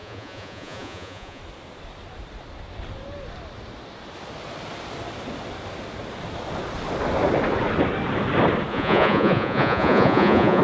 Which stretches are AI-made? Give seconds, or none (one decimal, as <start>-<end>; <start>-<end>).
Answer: 0.0-1.4; 8.7-10.6